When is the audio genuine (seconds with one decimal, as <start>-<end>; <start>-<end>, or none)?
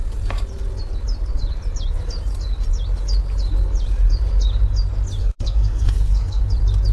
0.0-5.2; 6.4-6.9